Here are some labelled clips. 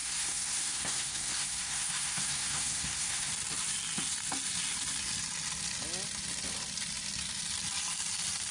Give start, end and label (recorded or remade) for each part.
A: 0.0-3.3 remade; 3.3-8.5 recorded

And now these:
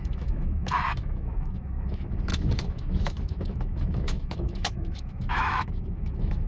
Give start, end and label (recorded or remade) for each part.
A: 0.0-6.5 remade

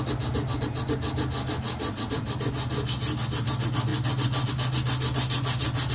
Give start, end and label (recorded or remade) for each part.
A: 0.0-5.9 recorded

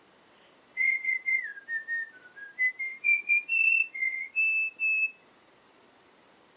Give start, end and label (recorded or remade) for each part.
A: 0.0-0.7 recorded; 0.7-1.4 remade; 1.4-2.9 recorded; 2.9-4.3 remade; 4.3-6.6 recorded

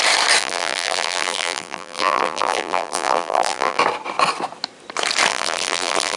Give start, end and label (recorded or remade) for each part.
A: 0.0-0.4 recorded; 0.4-3.8 remade; 3.8-5.3 recorded; 5.3-6.2 remade